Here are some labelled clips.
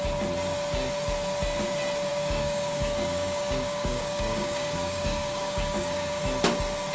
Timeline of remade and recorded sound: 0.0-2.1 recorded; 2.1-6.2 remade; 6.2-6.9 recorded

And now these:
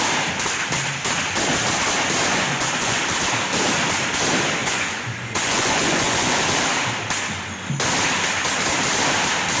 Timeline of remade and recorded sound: 0.0-2.3 recorded; 2.3-3.0 remade; 3.0-4.6 recorded; 4.6-6.4 remade; 6.4-9.6 recorded